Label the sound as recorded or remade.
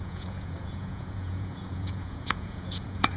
remade